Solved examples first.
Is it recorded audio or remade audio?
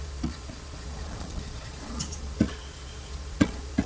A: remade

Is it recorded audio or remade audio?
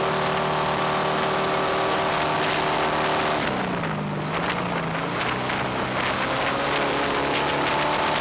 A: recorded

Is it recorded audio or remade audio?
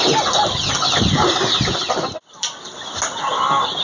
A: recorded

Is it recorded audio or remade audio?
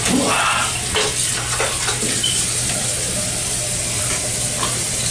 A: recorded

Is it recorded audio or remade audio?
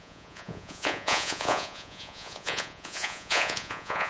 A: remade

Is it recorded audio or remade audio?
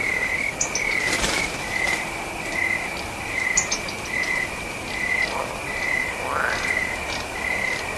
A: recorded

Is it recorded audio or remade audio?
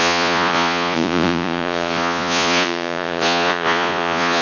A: remade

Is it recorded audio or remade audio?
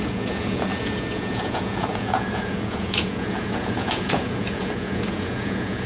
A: remade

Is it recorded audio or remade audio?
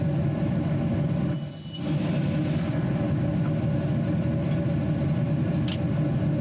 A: recorded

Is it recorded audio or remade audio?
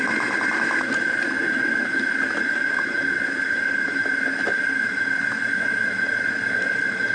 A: recorded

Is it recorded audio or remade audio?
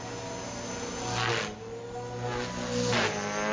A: recorded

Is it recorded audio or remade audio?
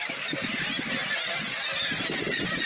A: recorded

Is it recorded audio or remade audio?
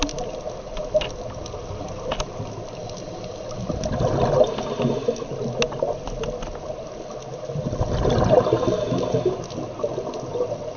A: recorded